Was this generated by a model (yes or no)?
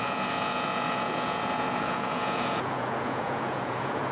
yes